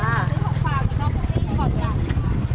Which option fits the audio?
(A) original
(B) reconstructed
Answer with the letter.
A